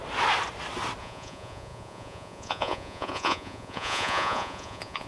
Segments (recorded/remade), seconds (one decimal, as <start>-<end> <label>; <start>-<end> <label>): 0.0-1.0 recorded; 1.0-5.1 remade